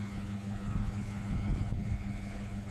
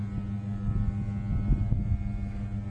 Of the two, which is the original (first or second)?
second